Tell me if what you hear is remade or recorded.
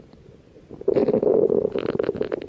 recorded